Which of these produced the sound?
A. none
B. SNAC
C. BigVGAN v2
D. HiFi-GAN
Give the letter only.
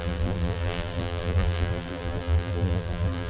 C